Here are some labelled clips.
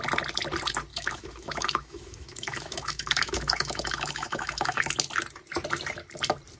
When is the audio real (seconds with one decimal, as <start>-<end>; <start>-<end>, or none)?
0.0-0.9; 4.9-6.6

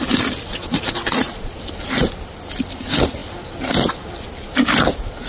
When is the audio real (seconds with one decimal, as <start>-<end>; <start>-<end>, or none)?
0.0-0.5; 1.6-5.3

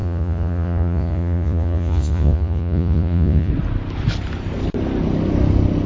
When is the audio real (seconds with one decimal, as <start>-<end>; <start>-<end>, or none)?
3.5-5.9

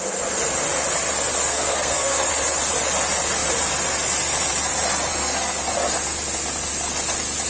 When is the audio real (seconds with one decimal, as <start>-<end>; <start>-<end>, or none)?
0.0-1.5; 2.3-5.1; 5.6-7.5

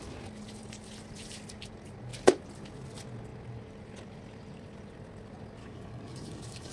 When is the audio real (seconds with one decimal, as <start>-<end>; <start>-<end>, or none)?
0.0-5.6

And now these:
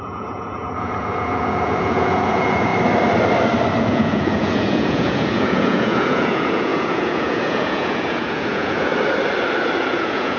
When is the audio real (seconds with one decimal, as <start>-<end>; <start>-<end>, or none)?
2.7-3.8; 8.9-9.8

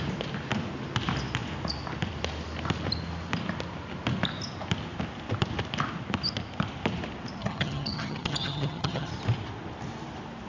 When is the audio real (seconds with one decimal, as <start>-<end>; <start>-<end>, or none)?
0.0-7.4; 9.1-10.5

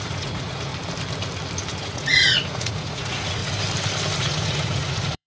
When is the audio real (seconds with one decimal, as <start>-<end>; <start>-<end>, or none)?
0.7-1.8; 3.4-4.2